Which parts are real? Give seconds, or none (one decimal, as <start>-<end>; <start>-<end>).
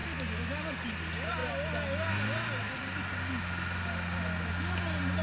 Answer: 0.0-5.2